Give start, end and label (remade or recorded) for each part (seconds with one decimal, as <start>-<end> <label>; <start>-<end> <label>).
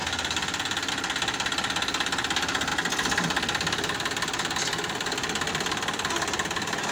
0.0-6.9 recorded